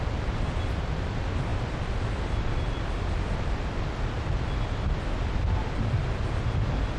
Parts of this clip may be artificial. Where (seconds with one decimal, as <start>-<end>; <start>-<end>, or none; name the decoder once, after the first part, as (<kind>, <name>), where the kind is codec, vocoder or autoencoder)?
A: none